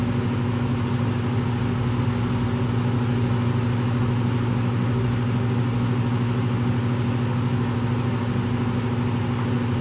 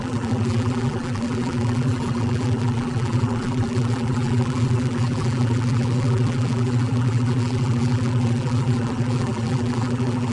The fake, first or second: second